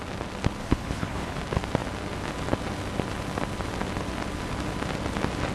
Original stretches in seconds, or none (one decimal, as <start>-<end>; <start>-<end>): 0.0-0.6; 1.4-5.5